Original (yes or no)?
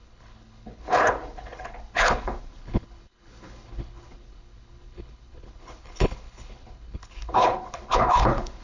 no